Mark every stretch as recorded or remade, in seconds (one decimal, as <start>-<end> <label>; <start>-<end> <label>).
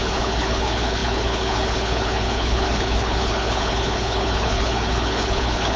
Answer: 0.0-5.8 remade